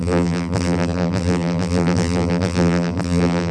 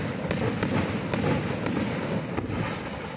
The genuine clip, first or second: second